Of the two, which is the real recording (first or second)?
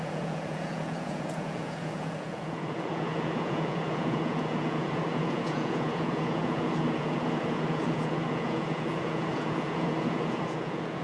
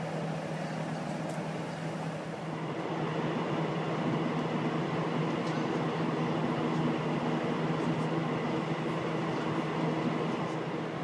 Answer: second